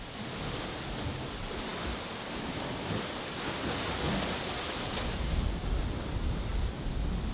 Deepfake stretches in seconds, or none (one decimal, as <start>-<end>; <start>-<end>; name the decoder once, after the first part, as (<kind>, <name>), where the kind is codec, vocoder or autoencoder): 1.7-6.1 (vocoder, BigVGAN v2); 6.5-7.3